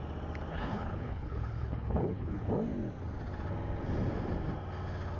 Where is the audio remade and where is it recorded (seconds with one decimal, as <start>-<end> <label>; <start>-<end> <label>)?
0.0-0.5 recorded; 0.5-2.5 remade; 2.5-5.2 recorded